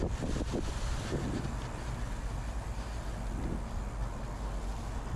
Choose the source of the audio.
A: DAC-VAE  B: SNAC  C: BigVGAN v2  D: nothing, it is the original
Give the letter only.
D